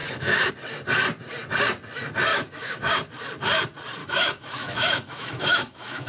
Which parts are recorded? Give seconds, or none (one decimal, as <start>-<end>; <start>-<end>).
0.5-2.3; 2.9-4.0